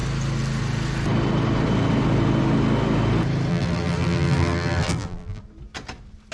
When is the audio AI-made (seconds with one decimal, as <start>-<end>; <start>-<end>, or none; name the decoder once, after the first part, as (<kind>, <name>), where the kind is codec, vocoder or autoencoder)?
3.5-5.4 (vocoder, BigVGAN v2)